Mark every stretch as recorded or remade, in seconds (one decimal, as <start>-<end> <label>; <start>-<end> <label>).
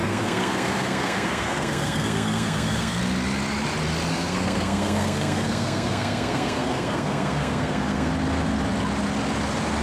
0.0-3.0 remade; 3.0-4.1 recorded; 4.1-8.1 remade; 8.1-9.8 recorded